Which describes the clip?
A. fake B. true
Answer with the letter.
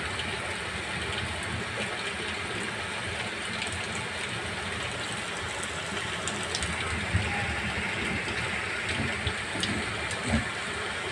B